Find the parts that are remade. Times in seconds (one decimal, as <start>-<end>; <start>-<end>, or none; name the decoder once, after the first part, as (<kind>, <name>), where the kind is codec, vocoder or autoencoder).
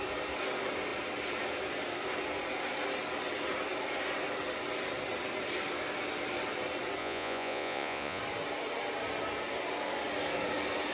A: 7.0-8.2 (vocoder, Vocos)